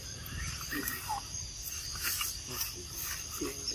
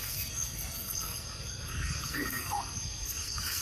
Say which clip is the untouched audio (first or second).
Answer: first